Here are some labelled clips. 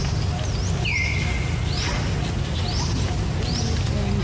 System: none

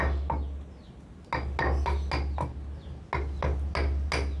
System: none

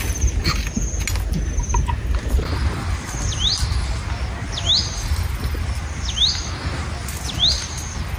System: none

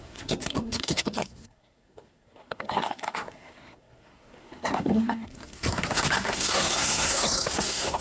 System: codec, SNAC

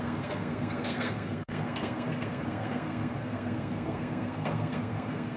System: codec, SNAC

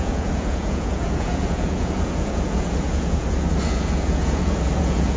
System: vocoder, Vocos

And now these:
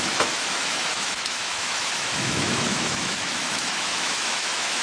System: autoencoder, DAC-VAE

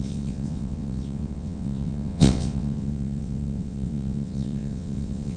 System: vocoder, WaveNeXt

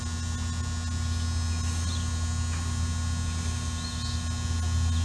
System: none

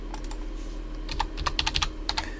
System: none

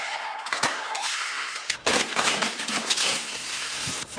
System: codec, SNAC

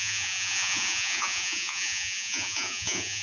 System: vocoder, Vocos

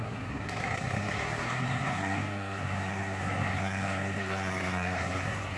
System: codec, SNAC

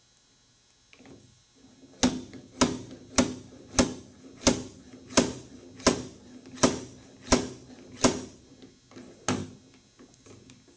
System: none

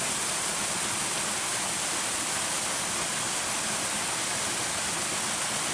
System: none